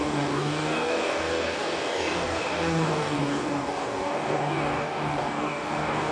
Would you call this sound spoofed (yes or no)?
yes